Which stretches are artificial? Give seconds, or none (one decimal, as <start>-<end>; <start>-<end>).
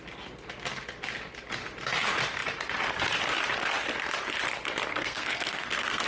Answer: 4.9-6.1